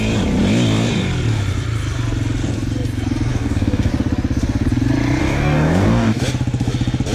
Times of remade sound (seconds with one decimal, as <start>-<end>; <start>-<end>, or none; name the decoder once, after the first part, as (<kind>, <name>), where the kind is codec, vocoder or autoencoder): 3.3-3.9 (codec, DAC); 5.2-6.2